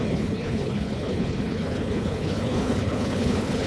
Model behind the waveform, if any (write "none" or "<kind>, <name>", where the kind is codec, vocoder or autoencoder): codec, HILCodec